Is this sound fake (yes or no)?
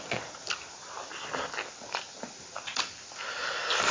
no